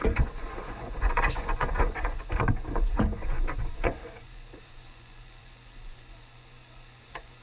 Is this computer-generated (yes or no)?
yes